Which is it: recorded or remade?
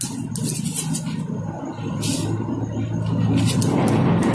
recorded